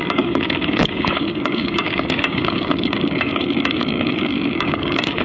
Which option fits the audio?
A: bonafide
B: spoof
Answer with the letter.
B